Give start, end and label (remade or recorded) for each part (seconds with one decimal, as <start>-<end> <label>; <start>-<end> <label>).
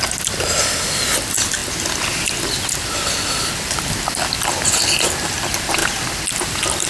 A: 0.0-6.9 recorded